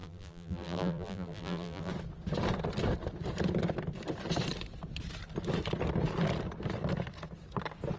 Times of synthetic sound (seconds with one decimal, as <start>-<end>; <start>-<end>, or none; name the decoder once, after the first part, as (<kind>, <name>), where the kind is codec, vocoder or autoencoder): 0.0-1.9 (vocoder, BigVGAN v2)